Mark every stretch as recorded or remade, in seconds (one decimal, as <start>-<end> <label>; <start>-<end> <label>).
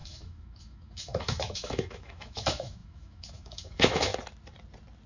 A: 0.0-4.1 remade; 4.1-5.1 recorded